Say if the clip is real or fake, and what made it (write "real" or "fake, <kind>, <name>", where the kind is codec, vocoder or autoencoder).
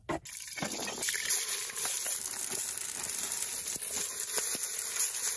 real